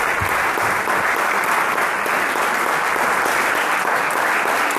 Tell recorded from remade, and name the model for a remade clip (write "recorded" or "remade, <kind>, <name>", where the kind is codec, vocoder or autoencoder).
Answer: recorded